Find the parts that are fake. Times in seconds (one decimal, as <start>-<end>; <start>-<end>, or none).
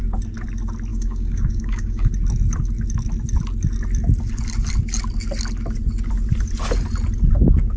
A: 0.9-2.1